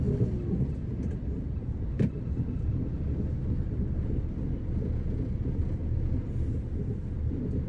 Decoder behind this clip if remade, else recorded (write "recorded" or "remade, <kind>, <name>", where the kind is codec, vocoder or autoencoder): recorded